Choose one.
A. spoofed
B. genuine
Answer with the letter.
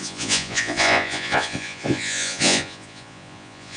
A